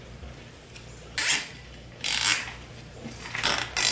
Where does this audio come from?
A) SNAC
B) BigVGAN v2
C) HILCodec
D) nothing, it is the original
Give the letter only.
D